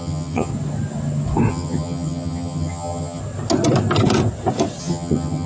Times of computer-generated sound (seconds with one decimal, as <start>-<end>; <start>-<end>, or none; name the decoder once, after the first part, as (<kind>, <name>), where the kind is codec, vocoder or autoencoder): 0.0-0.5 (vocoder, HiFi-GAN); 1.5-3.2; 4.8-5.5